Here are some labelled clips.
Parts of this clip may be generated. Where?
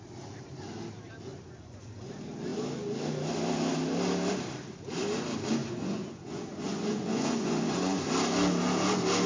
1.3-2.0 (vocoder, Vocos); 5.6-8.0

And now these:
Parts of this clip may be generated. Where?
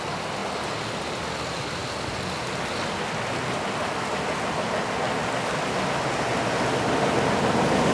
none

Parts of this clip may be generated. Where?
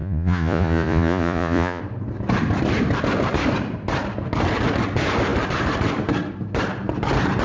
0.0-1.8 (vocoder, Vocos)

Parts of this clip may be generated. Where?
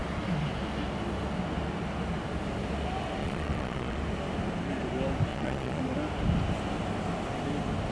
3.2-4.0 (vocoder, Vocos); 5.3-5.8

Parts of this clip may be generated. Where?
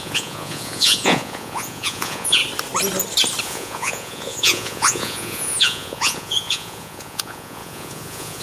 0.0-2.4 (vocoder, Vocos); 3.4-8.4